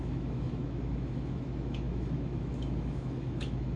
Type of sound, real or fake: fake